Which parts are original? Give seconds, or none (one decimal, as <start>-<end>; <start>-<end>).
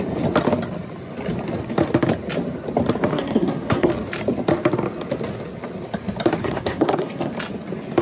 0.0-3.1; 3.9-6.4; 7.3-8.0